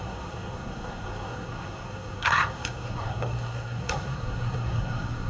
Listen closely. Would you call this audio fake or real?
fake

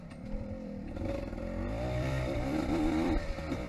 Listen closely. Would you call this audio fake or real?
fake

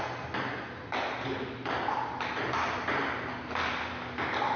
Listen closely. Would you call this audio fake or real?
real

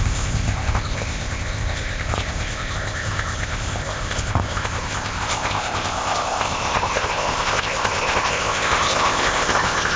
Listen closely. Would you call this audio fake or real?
fake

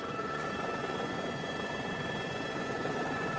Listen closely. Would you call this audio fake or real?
fake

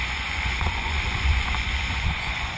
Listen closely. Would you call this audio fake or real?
fake